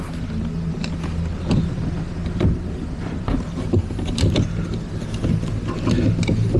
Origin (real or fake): real